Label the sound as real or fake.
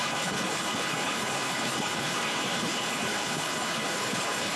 fake